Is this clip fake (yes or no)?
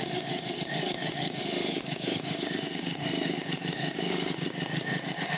yes